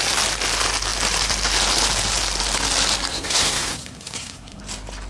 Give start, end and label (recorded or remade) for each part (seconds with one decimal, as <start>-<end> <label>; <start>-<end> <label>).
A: 0.0-3.1 recorded; 3.1-4.6 remade; 4.6-5.1 recorded